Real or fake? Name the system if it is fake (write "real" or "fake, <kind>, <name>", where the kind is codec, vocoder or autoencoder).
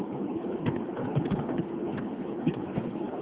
fake, codec, HILCodec